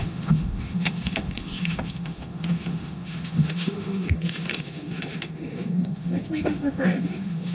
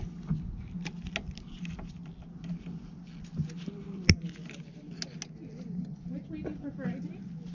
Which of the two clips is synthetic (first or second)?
first